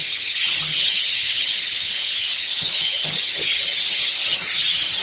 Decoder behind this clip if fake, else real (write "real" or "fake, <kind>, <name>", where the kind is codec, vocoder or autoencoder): fake, vocoder, HiFi-GAN